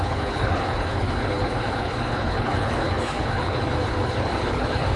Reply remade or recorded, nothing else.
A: remade